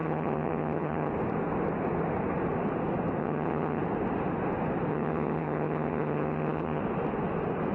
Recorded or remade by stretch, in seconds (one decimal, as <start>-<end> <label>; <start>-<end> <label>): 0.0-1.1 remade; 1.1-3.2 recorded; 3.2-3.8 remade; 3.8-4.9 recorded; 4.9-6.8 remade; 6.8-7.7 recorded